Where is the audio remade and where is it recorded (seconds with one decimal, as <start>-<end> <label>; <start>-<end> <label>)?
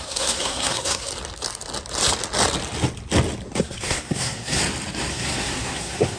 0.0-1.1 remade; 1.1-3.6 recorded; 3.6-4.6 remade; 4.6-5.1 recorded; 5.1-6.2 remade